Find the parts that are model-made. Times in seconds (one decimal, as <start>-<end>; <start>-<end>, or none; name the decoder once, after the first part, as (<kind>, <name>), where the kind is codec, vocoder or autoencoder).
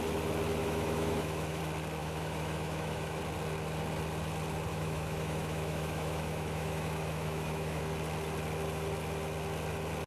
0.6-1.6 (autoencoder, DAC-VAE); 2.0-3.2; 4.7-7.8